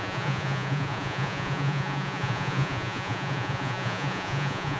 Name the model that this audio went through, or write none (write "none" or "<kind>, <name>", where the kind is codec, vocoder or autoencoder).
vocoder, Vocos